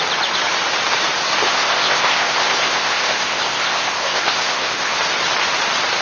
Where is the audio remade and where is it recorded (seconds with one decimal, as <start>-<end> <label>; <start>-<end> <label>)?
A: 0.0-1.4 recorded; 1.4-5.0 remade; 5.0-6.0 recorded